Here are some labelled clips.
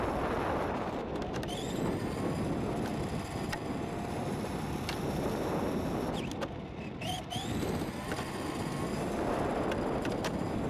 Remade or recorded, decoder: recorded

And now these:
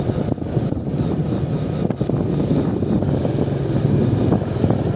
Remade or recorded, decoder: recorded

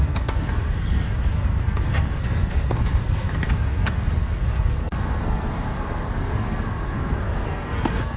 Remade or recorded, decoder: remade, codec, SNAC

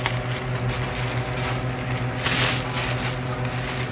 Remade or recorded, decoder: recorded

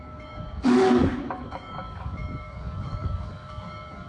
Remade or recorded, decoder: remade, codec, DAC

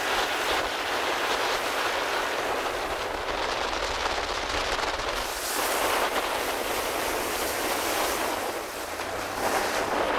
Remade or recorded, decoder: recorded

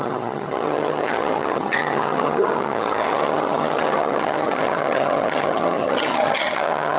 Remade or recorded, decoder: remade, vocoder, HiFi-GAN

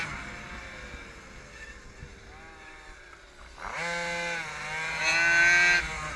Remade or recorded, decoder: recorded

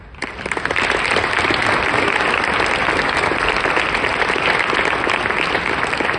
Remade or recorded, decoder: recorded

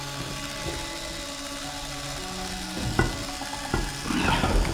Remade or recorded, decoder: recorded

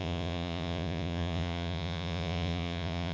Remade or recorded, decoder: remade, vocoder, Vocos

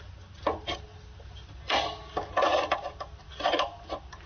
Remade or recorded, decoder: recorded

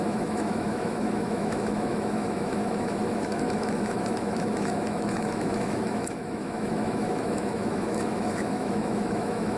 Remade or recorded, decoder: remade, autoencoder, DAC-VAE